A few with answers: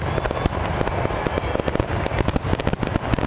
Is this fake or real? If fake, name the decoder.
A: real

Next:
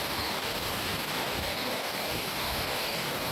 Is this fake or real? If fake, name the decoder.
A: fake, codec, DAC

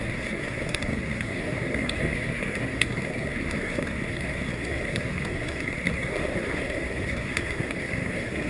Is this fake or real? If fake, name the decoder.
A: fake, codec, SNAC